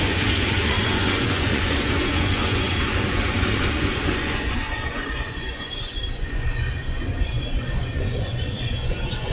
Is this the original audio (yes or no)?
no